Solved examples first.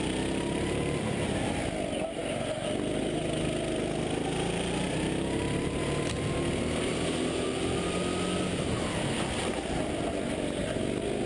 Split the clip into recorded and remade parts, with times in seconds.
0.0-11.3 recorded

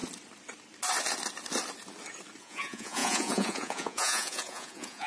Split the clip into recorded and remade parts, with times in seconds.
0.0-2.4 recorded; 2.4-5.1 remade

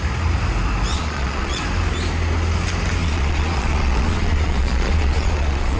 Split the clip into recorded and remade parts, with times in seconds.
0.0-0.9 recorded; 0.9-1.6 remade; 1.6-3.0 recorded; 3.0-5.8 remade

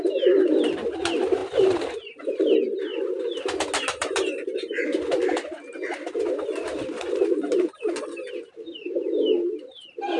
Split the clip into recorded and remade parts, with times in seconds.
0.0-10.2 recorded

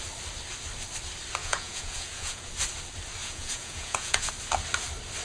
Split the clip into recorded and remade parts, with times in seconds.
0.0-1.4 recorded; 1.4-2.5 remade; 2.5-3.2 recorded; 3.2-4.3 remade; 4.3-5.2 recorded

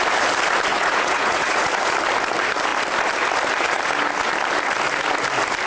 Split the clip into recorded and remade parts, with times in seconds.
0.0-0.7 recorded; 0.7-1.7 remade; 1.7-5.7 recorded

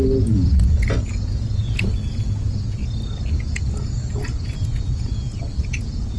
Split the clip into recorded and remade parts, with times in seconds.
0.0-2.8 remade; 2.8-3.5 recorded; 3.5-6.2 remade